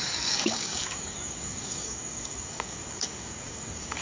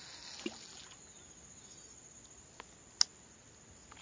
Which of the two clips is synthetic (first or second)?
first